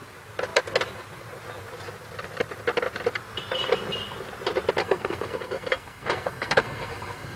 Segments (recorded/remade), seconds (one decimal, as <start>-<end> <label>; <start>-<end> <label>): 0.0-4.8 recorded; 4.8-7.4 remade